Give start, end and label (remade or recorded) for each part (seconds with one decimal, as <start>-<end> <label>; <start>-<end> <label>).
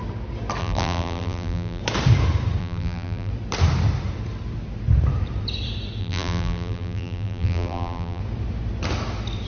0.0-0.6 recorded; 0.6-1.8 remade; 1.8-2.6 recorded; 2.6-3.3 remade; 3.3-6.0 recorded; 6.0-8.2 remade; 8.2-9.5 recorded